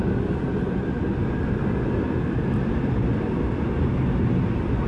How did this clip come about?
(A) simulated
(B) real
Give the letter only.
B